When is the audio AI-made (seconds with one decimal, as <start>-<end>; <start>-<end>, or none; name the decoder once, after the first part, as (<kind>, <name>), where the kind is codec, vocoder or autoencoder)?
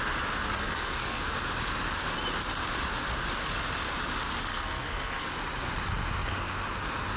0.6-1.2 (codec, SNAC); 4.5-5.3